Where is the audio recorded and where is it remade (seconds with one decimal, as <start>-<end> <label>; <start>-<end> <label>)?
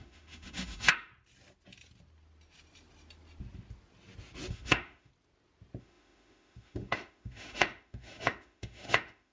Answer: 0.0-1.1 remade; 1.1-4.5 recorded; 4.5-5.1 remade; 5.1-5.8 recorded; 5.8-9.3 remade